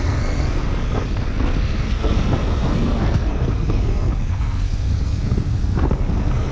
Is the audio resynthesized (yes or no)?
yes